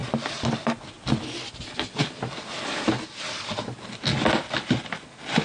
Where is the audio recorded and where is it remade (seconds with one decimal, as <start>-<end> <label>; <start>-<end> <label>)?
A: 0.0-5.4 recorded